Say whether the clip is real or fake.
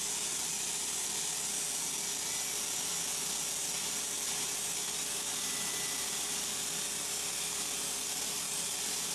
real